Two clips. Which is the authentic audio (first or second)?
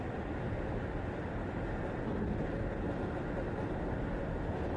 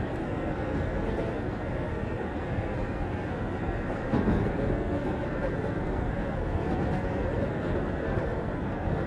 first